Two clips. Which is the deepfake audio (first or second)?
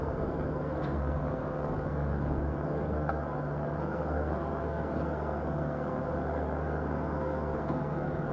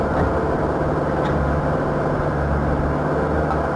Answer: first